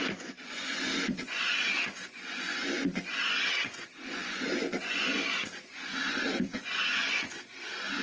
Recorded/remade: remade